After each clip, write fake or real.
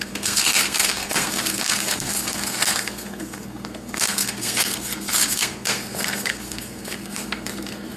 fake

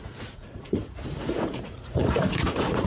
fake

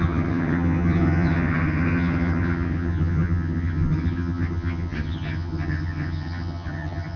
fake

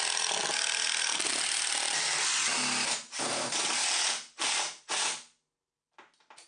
real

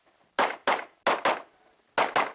real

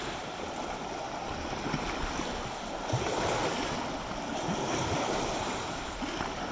real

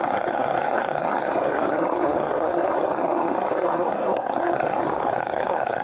fake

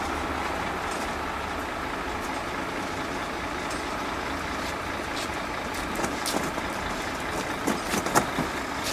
real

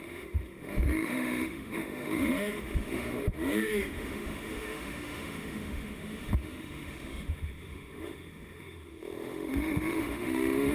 fake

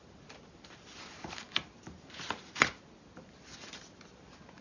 real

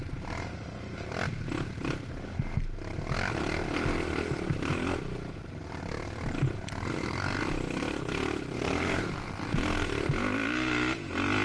real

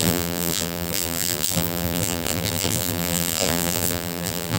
fake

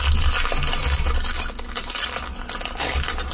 real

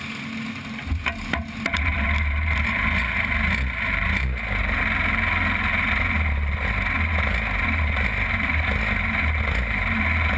real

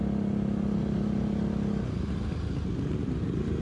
real